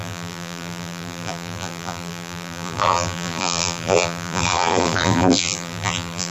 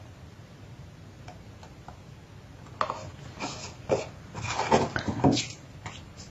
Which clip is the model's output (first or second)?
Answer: first